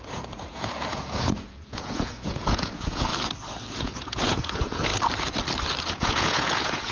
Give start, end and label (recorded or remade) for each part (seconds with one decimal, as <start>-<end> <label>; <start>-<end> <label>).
0.0-3.1 remade; 3.1-3.8 recorded; 3.8-4.9 remade; 4.9-5.8 recorded; 5.8-6.9 remade